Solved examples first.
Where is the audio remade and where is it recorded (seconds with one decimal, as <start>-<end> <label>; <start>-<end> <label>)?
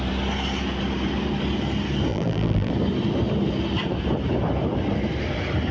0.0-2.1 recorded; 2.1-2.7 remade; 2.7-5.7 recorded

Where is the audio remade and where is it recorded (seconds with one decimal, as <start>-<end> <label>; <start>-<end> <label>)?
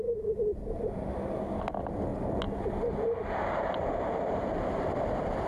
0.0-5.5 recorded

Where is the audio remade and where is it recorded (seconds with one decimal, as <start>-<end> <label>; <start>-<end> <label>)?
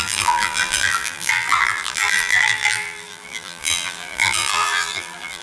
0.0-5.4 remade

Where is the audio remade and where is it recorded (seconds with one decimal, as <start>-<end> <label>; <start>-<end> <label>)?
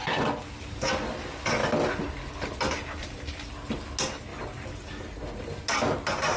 0.0-6.4 recorded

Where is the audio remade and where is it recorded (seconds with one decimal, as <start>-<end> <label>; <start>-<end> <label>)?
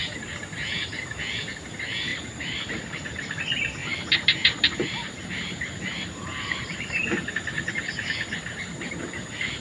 0.0-2.1 recorded; 2.1-3.4 remade; 3.4-3.8 recorded; 3.8-7.3 remade; 7.3-9.6 recorded